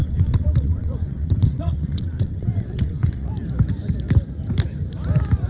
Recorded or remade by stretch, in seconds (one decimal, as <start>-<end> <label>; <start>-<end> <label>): 0.0-3.3 remade; 3.3-5.5 recorded

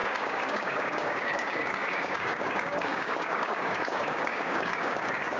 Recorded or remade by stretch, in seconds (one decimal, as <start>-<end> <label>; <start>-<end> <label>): 0.0-5.4 remade

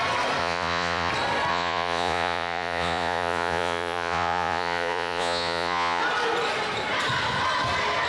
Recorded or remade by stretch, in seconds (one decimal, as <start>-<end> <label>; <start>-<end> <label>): 0.0-0.4 recorded; 0.4-1.1 remade; 1.1-1.5 recorded; 1.5-6.0 remade; 6.0-8.1 recorded

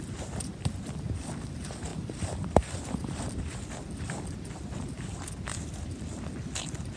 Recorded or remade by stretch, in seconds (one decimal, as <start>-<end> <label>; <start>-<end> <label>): 0.0-1.9 recorded; 1.9-3.0 remade; 3.0-7.0 recorded